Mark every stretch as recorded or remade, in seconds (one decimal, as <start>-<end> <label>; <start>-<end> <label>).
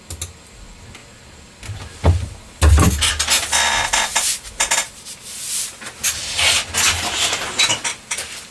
0.0-8.5 recorded